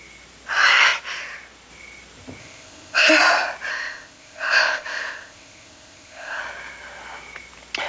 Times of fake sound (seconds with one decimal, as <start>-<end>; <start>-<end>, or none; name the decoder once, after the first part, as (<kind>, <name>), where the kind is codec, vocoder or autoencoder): 2.4-3.1 (codec, ZipCodec); 3.7-6.4